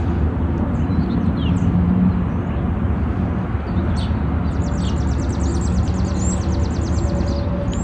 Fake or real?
real